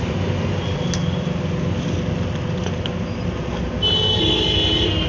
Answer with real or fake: real